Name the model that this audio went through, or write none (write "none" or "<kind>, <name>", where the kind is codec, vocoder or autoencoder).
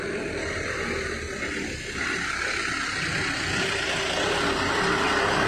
none